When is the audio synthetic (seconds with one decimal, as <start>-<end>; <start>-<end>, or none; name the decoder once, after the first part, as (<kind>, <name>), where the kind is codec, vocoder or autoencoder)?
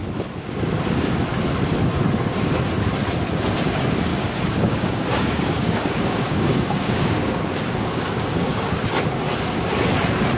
4.1-8.9 (codec, DAC)